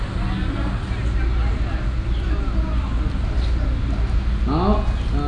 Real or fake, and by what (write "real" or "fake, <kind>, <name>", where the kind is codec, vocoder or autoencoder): real